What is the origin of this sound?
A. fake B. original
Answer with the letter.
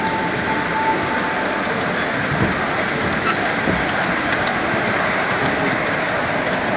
B